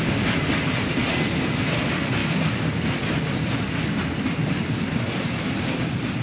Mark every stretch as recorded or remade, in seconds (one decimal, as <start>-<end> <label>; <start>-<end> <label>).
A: 0.0-6.2 remade